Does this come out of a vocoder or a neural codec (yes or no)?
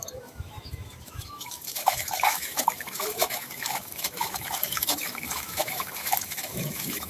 yes